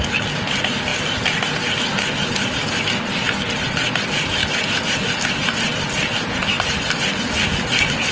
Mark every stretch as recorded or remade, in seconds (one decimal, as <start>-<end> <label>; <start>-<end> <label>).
0.0-8.1 recorded